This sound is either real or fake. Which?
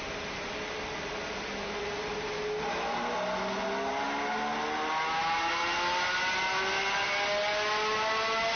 real